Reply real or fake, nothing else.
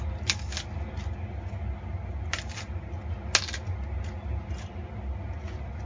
real